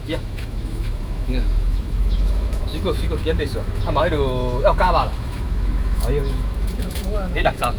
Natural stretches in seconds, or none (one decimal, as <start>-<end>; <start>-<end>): none